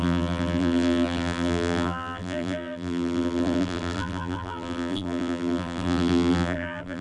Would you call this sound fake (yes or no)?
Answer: yes